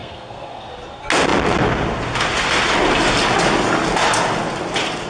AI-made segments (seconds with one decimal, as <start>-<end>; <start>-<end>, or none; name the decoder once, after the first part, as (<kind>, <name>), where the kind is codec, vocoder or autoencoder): 0.0-0.7 (codec, SNAC)